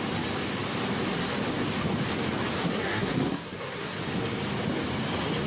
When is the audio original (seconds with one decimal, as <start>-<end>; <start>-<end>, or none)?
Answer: 0.0-2.6; 4.0-5.5